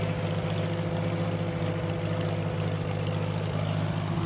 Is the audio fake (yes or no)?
no